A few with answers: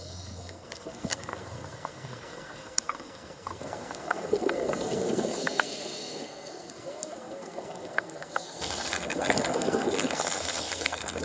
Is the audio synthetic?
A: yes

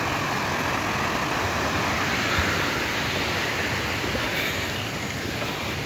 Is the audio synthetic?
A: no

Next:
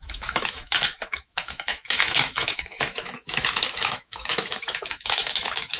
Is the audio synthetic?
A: yes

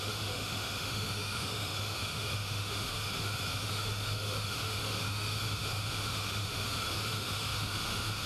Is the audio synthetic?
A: yes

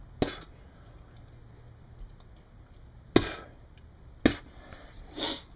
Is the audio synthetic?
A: no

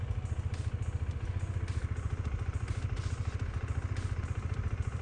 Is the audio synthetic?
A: no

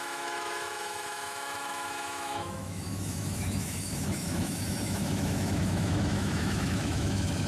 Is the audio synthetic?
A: yes